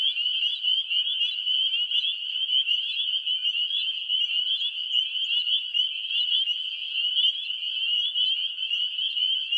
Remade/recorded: recorded